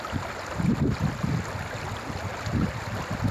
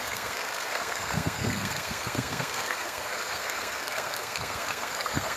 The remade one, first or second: second